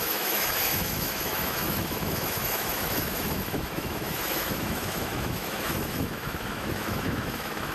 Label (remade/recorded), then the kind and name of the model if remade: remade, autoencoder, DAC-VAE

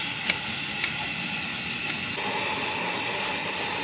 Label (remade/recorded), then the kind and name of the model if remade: recorded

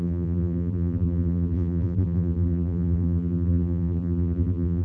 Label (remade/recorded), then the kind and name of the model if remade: remade, vocoder, BigVGAN v2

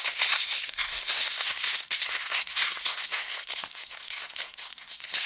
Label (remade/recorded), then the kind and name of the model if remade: remade, codec, SNAC